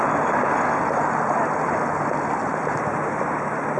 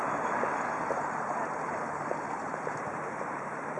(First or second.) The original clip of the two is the first